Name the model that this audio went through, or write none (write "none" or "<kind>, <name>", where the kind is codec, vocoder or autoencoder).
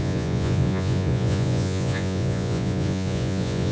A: vocoder, Vocos